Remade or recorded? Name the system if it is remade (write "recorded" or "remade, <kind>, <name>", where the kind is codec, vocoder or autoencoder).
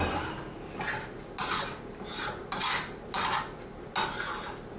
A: recorded